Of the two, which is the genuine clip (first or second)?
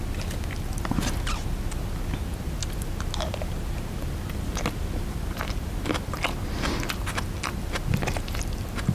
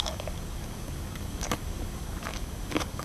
first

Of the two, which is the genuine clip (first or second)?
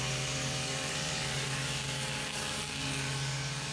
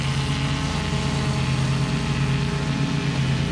second